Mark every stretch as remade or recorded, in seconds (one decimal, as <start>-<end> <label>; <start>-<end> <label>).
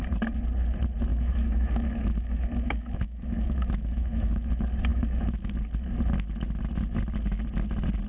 0.0-1.1 recorded; 1.1-4.5 remade; 4.5-4.9 recorded; 4.9-5.5 remade; 5.5-8.1 recorded